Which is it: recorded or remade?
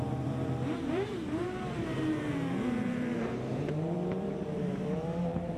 remade